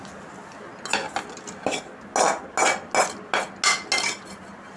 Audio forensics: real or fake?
real